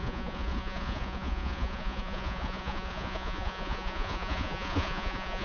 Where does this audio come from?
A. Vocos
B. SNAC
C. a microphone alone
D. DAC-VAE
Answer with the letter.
A